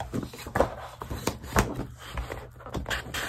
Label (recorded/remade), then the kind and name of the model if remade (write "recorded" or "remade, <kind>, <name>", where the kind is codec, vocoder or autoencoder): recorded